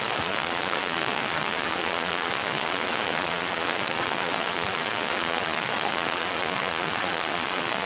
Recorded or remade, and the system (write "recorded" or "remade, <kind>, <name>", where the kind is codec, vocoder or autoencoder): remade, vocoder, Vocos